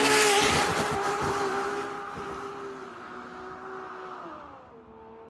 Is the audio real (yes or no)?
yes